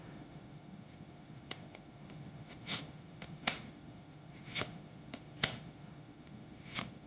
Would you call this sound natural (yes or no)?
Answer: no